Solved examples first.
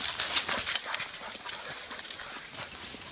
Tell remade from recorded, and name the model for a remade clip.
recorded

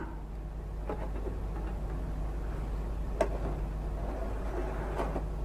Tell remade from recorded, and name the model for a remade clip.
recorded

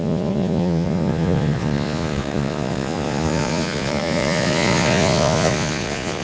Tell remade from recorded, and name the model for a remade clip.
remade, vocoder, Vocos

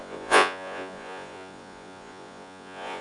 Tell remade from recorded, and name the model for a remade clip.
remade, vocoder, Vocos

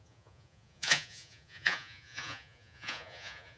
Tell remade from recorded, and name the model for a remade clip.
remade, vocoder, Vocos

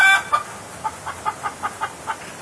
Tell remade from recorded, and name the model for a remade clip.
recorded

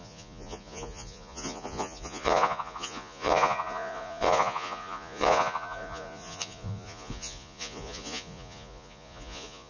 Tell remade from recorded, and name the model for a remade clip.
remade, vocoder, Vocos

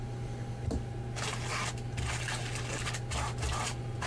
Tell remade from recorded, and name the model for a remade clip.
recorded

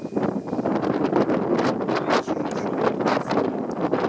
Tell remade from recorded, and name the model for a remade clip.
recorded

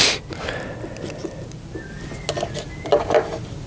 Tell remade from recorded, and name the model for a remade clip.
recorded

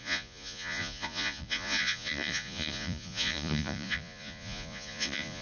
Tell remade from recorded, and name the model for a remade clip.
remade, vocoder, Vocos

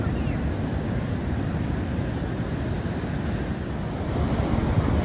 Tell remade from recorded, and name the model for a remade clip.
recorded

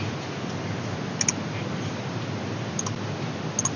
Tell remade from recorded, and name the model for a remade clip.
recorded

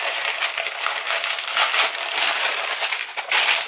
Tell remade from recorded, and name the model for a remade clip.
recorded